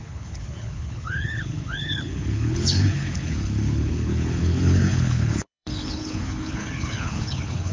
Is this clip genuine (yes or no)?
no